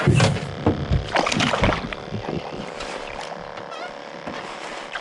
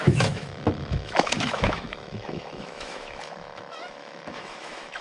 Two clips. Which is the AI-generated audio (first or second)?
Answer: second